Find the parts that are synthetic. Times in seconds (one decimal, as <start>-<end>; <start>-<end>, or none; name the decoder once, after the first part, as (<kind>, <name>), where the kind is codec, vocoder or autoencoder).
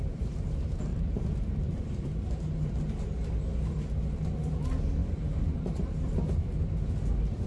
0.9-2.4 (vocoder, BigVGAN v2); 5.0-6.1